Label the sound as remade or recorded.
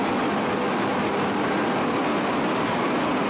recorded